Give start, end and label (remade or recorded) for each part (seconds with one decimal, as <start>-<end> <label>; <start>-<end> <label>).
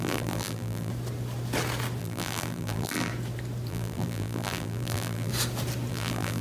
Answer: 0.0-0.9 remade; 0.9-2.0 recorded; 2.0-3.1 remade; 3.1-3.7 recorded; 3.7-5.3 remade; 5.3-5.9 recorded; 5.9-6.4 remade